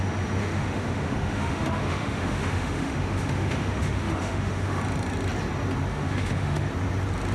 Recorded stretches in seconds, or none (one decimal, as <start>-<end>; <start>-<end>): 0.0-0.4; 4.8-5.9; 6.7-7.3